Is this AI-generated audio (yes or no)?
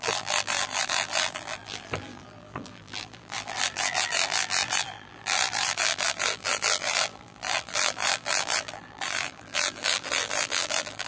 yes